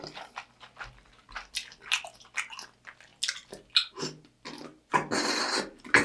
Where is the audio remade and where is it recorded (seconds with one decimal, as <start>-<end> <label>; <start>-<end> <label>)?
0.0-6.0 recorded